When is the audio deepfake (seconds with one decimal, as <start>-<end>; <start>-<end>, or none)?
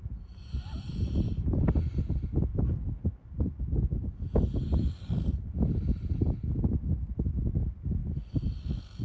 none